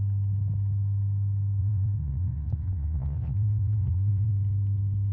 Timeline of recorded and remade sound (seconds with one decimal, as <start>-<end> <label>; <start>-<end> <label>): 0.0-1.6 recorded; 1.6-4.3 remade; 4.3-5.1 recorded